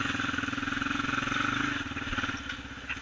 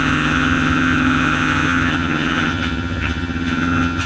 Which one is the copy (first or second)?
second